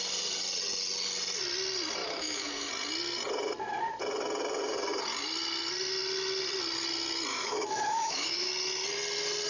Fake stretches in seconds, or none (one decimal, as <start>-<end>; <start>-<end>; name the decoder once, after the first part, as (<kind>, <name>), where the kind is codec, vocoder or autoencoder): 2.0-2.7 (autoencoder, DAC-VAE); 7.3-8.5